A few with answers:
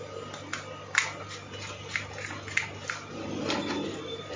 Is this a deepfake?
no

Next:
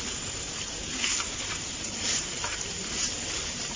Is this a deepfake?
yes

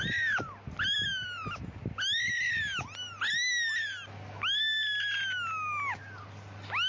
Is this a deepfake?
no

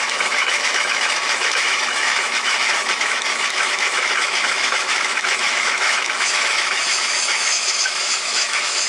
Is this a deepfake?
yes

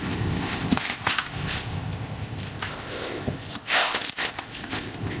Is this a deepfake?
yes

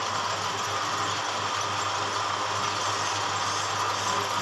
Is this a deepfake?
no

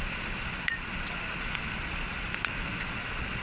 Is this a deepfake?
yes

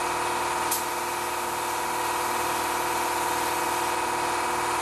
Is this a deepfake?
no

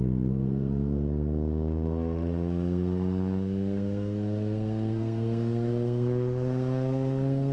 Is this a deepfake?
yes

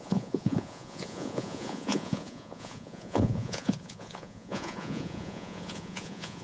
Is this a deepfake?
yes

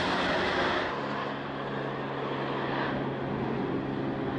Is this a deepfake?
no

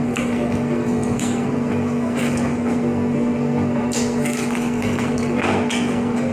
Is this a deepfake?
yes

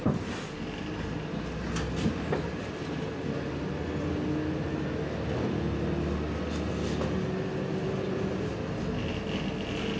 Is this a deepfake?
no